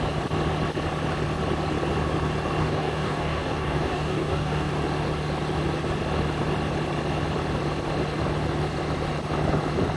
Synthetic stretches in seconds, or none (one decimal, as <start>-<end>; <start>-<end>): 2.6-4.7